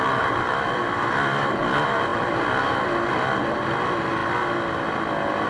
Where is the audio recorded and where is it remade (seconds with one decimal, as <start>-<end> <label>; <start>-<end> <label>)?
0.0-5.5 recorded